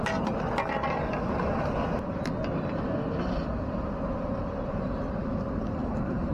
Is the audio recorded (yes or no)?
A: yes